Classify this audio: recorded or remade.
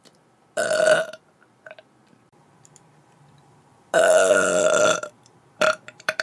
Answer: remade